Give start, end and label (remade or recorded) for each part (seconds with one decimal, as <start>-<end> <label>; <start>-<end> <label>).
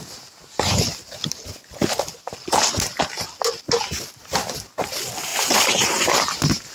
0.0-6.7 recorded